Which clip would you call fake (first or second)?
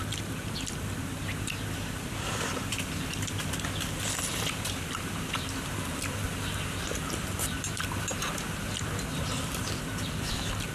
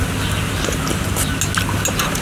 first